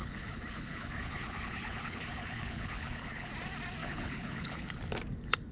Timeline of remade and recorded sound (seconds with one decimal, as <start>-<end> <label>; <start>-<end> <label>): 0.0-3.3 remade; 3.3-3.8 recorded; 3.8-4.8 remade; 4.8-5.5 recorded